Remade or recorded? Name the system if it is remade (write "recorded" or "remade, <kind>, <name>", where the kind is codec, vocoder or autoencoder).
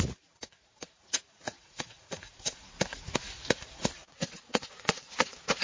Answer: remade, vocoder, Vocos